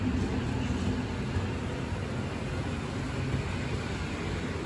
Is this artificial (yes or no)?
no